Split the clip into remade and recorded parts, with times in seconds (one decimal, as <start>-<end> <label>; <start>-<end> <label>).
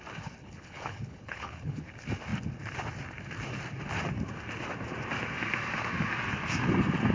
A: 0.0-0.4 recorded; 0.4-1.9 remade; 1.9-7.1 recorded